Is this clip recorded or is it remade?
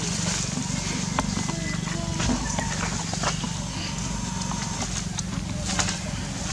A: recorded